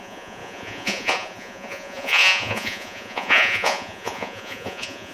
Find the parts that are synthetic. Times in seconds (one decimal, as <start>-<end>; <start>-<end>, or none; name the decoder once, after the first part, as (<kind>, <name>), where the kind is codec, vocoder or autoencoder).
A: 0.0-5.1 (vocoder, Vocos)